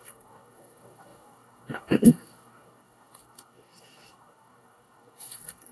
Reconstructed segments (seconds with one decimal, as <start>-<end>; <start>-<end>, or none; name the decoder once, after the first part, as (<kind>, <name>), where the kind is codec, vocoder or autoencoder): 0.0-5.7 (codec, DAC)